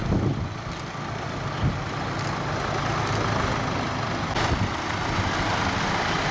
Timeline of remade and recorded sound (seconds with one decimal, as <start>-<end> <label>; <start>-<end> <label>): 0.0-6.3 recorded

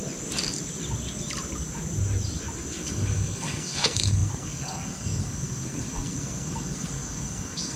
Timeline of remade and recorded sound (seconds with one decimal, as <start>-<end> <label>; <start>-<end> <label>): 0.0-2.7 recorded; 2.7-7.8 remade

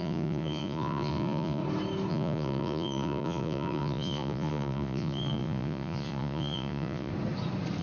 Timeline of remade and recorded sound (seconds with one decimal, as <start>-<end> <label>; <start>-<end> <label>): 0.0-1.6 remade; 1.6-2.1 recorded; 2.1-7.1 remade; 7.1-7.8 recorded

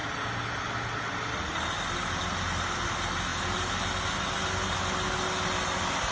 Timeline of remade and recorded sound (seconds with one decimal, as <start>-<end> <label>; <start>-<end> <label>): 0.0-6.1 recorded

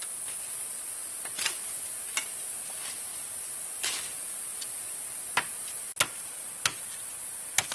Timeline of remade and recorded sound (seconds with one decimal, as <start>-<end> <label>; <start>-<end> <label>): 0.0-3.1 recorded; 3.1-3.9 remade; 3.9-4.5 recorded; 4.5-6.2 remade; 6.2-7.7 recorded

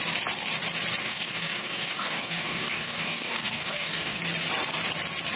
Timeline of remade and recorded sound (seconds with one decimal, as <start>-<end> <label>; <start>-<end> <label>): 0.0-1.0 recorded; 1.0-4.2 remade; 4.2-5.4 recorded

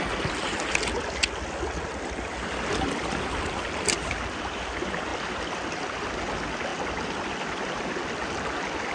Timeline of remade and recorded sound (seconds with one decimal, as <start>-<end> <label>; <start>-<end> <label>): 0.0-8.9 recorded

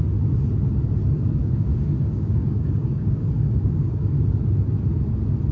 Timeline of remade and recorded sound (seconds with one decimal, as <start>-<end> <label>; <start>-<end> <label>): 0.0-1.4 recorded; 1.4-4.1 remade; 4.1-5.5 recorded